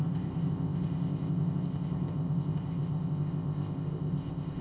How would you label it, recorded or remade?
remade